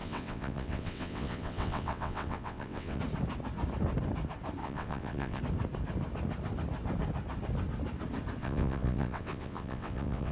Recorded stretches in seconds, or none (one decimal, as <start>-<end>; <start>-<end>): 3.0-4.6; 5.4-8.4